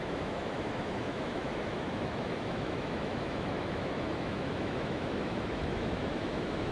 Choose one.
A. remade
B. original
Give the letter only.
A